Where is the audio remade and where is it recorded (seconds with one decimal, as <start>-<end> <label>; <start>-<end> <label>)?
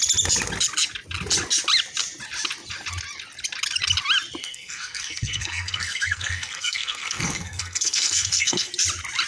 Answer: 0.0-4.4 recorded; 4.4-8.7 remade; 8.7-9.3 recorded